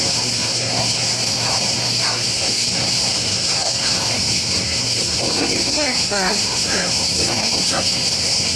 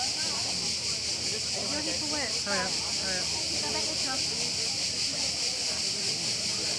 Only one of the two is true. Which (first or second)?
second